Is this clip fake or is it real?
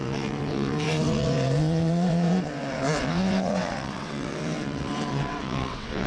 fake